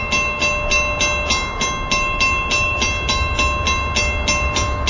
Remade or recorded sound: recorded